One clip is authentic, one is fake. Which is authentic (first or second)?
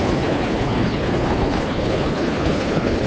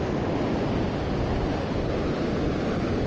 second